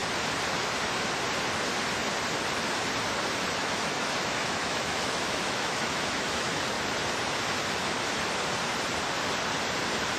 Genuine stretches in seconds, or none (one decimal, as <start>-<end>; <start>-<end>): 0.0-3.6; 6.6-10.2